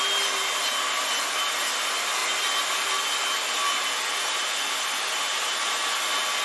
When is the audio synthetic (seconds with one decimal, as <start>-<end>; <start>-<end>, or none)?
none